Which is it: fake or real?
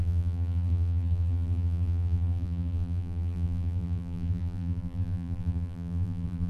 fake